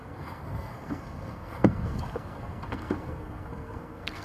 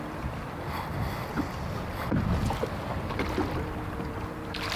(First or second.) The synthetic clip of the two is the first